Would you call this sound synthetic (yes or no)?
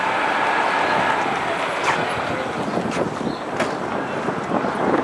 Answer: no